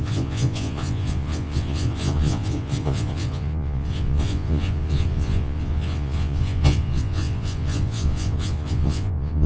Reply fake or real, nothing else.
fake